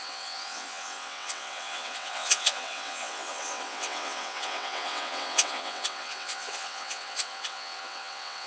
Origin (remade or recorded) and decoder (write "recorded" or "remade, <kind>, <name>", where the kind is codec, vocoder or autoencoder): remade, vocoder, WaveNeXt